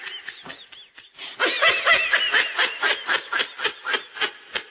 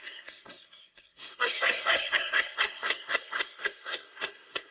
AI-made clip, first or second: second